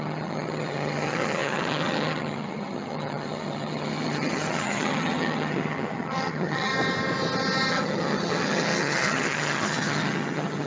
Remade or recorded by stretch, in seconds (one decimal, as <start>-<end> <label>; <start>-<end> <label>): 0.0-6.7 remade; 6.7-7.7 recorded; 7.7-10.7 remade